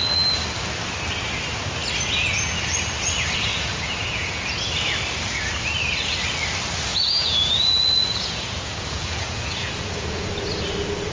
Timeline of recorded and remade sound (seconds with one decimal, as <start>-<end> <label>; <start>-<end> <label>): 0.0-3.5 recorded; 3.5-4.7 remade; 4.7-6.9 recorded; 6.9-10.3 remade; 10.3-11.1 recorded